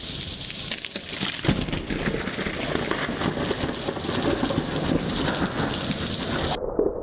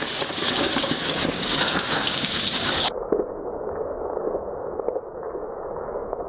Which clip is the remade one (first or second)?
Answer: second